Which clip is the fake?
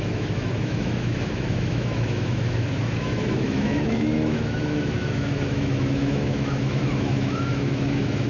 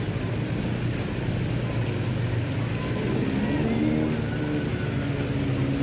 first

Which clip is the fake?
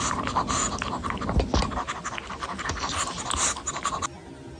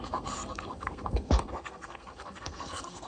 second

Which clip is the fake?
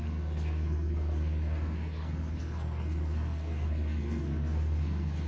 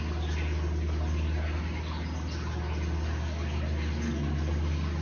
first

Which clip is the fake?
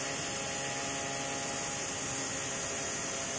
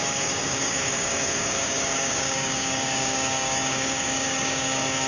second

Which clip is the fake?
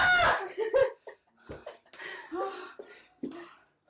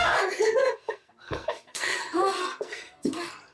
second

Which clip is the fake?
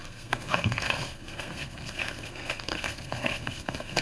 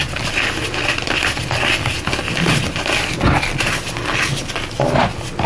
first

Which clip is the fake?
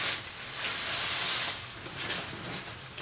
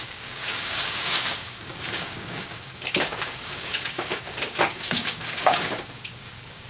second